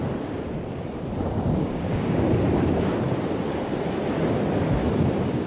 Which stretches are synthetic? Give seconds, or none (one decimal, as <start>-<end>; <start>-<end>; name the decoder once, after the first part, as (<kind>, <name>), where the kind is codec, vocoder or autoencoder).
1.6-2.3 (codec, DAC)